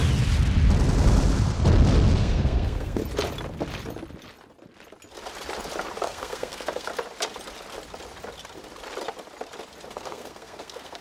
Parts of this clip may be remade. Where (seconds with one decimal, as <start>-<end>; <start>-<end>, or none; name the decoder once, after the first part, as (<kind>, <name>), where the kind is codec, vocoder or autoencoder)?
2.2-3.0 (codec, SNAC); 6.0-6.9; 9.9-11.0